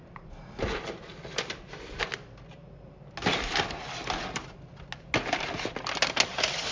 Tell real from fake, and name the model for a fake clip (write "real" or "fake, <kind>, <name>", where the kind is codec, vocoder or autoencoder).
real